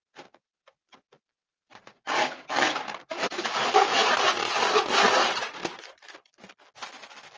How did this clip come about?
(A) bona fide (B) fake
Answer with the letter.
A